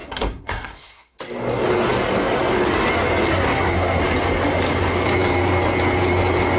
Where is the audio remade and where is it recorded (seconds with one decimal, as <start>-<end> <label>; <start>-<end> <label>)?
0.0-1.2 remade; 1.2-3.3 recorded; 3.3-4.0 remade; 4.0-6.6 recorded